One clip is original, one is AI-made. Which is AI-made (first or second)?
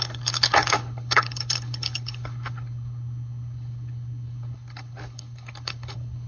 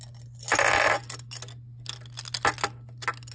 first